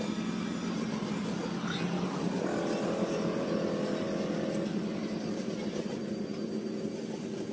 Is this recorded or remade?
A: recorded